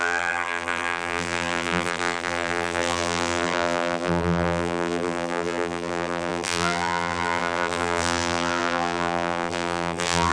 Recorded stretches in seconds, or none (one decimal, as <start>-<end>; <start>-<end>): none